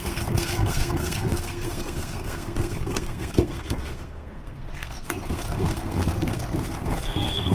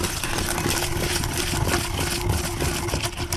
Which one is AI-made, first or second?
first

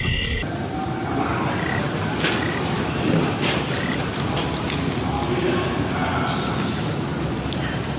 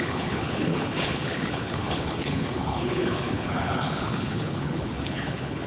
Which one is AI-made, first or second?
second